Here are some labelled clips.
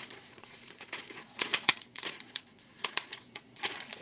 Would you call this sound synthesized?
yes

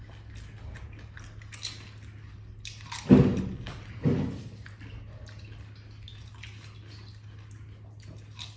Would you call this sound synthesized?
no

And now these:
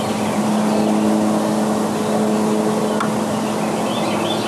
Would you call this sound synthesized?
no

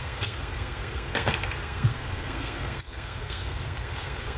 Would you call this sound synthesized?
yes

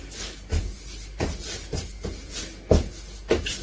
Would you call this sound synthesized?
no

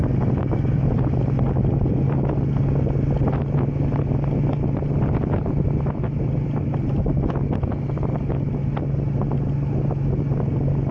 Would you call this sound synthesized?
no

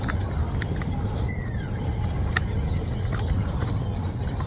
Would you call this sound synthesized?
no